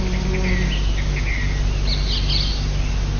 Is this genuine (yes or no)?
yes